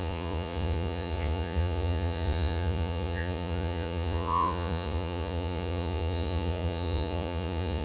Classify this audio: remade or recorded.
remade